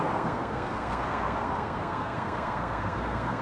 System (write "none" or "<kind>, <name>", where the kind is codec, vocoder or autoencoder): codec, SNAC